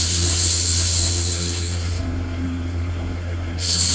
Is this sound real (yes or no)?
no